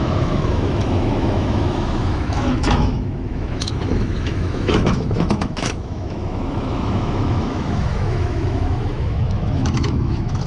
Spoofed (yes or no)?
yes